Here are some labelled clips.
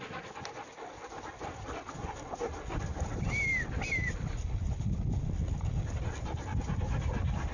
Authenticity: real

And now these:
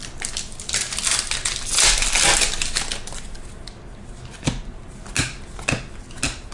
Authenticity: real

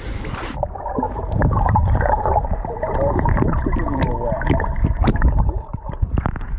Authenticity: fake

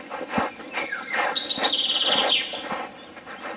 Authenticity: real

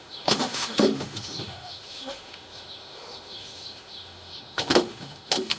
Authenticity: fake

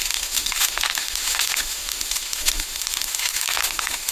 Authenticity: fake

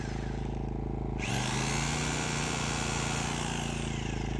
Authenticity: real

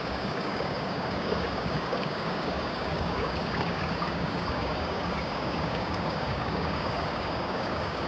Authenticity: fake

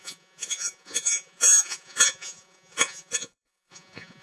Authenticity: fake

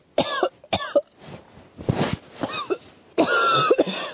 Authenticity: real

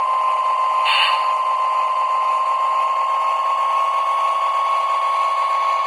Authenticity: real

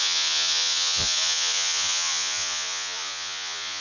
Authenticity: fake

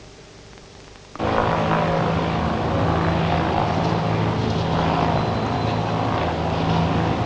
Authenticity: real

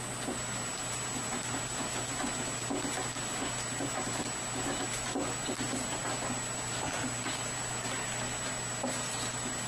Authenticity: real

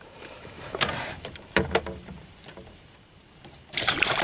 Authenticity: fake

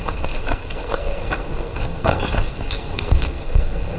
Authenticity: fake